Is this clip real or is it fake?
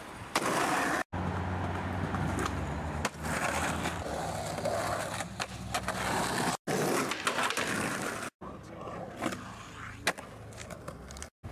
real